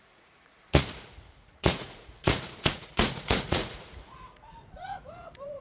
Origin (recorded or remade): remade